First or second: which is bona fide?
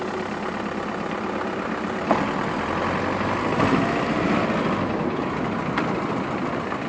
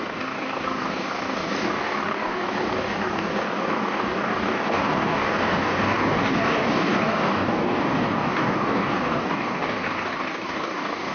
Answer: first